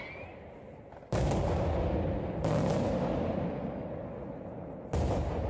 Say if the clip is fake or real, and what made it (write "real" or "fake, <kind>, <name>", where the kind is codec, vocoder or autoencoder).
real